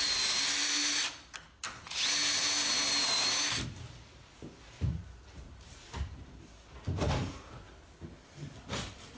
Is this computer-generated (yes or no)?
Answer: no